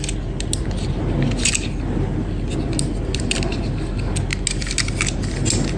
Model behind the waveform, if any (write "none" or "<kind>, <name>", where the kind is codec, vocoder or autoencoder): none